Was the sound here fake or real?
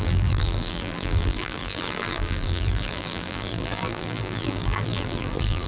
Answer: fake